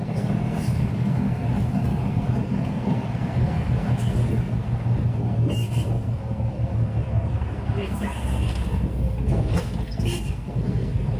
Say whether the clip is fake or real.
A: fake